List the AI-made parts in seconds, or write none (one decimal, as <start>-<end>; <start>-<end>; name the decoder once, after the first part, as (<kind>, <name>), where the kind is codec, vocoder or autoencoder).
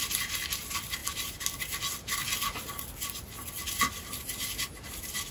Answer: none